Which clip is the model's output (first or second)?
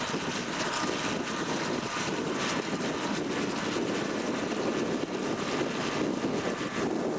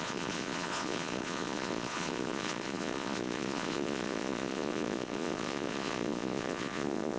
second